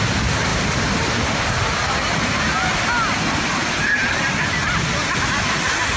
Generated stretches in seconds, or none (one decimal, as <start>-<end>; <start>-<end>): none